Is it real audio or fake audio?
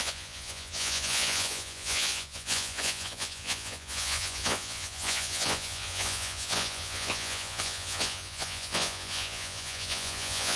fake